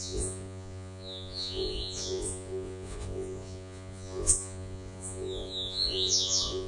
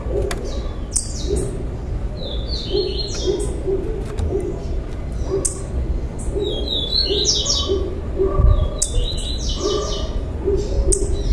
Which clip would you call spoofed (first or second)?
first